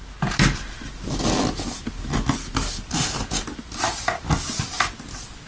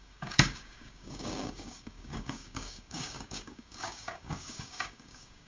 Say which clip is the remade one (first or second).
second